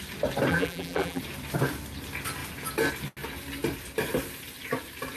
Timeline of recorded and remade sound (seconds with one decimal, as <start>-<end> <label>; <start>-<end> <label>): 0.0-0.5 recorded; 0.5-1.2 remade; 1.2-5.2 recorded